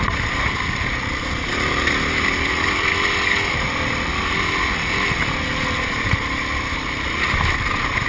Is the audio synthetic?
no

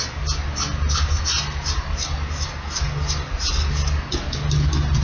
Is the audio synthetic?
no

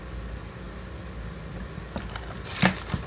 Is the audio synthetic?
no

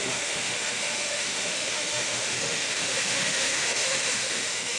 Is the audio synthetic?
yes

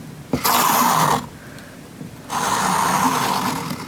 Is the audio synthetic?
no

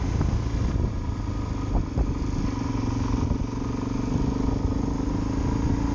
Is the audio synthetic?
no